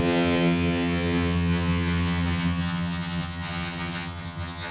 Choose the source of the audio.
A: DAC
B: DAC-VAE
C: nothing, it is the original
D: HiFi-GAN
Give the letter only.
D